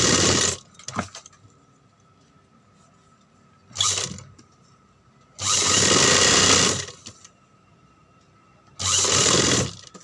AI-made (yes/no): no